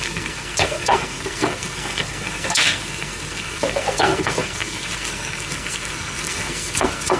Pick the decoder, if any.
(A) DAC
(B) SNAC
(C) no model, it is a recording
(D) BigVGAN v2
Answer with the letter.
B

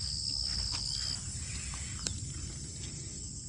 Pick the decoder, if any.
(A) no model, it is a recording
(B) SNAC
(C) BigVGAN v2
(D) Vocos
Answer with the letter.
A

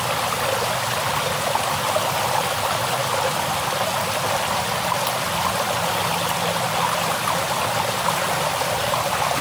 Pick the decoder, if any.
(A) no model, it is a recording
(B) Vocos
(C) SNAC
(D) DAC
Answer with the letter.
A